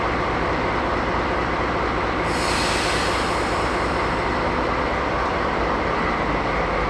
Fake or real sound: real